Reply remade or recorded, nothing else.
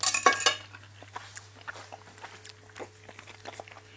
recorded